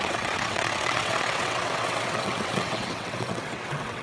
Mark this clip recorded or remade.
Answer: remade